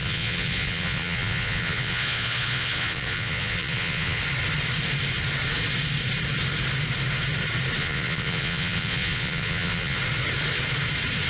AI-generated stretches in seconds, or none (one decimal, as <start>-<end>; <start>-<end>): 0.0-4.2; 7.8-10.0